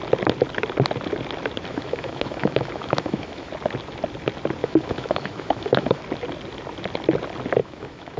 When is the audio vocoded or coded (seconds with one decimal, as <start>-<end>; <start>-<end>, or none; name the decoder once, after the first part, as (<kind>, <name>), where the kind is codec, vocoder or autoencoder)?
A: 1.7-3.5 (autoencoder, DAC-VAE); 4.6-6.0; 7.6-8.2